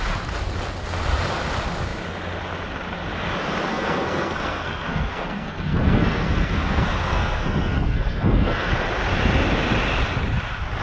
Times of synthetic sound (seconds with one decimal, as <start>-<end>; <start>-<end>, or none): 3.7-8.7